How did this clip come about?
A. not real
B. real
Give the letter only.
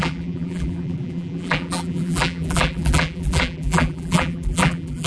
A